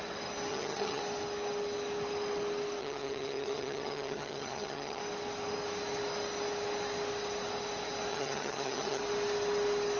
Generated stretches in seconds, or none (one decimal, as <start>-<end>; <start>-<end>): 0.5-1.0; 2.8-5.0; 8.1-9.0